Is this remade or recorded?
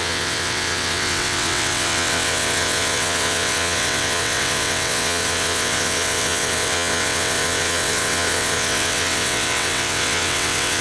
remade